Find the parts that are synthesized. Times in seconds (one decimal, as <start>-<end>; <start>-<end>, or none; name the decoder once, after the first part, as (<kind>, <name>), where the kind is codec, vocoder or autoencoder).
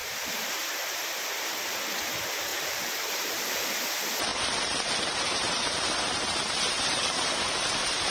0.0-4.3 (vocoder, BigVGAN v2); 5.0-8.1